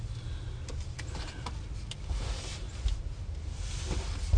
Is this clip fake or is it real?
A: real